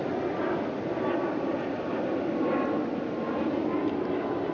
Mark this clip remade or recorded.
recorded